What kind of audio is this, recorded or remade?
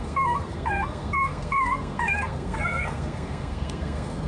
remade